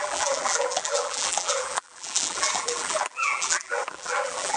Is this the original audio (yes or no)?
no